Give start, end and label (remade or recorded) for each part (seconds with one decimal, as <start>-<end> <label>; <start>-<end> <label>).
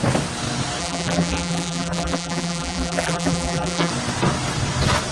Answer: 0.0-0.8 recorded; 0.8-3.9 remade; 3.9-5.1 recorded